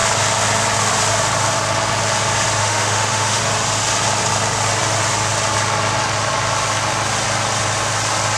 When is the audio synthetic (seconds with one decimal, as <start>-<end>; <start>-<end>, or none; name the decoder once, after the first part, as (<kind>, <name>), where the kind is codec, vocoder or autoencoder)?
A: 2.6-3.4 (autoencoder, DAC-VAE)